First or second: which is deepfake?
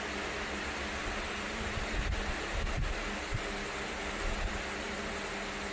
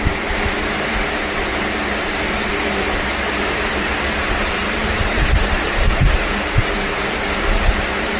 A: second